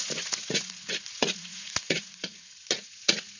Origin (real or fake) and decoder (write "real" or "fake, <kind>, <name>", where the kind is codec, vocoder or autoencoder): fake, vocoder, Vocos